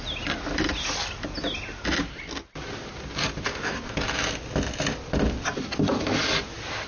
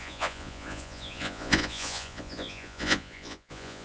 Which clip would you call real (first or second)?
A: first